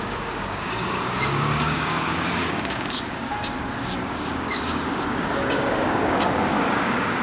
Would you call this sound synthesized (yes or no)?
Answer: yes